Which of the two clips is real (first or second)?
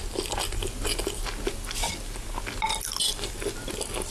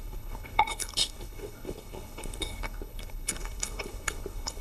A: first